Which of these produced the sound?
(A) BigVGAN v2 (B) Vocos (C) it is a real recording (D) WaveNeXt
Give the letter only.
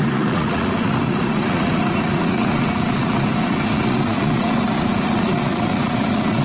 B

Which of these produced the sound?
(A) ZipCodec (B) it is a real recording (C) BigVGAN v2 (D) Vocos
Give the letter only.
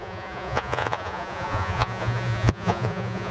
D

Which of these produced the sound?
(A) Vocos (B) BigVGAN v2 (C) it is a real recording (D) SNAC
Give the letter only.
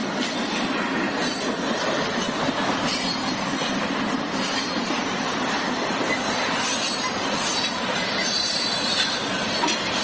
C